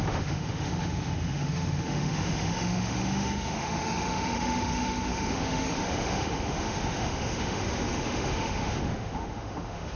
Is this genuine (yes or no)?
no